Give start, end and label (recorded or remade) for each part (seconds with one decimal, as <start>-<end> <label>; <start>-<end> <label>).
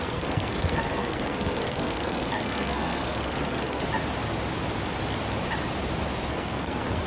0.0-3.8 remade; 3.8-6.3 recorded; 6.3-7.1 remade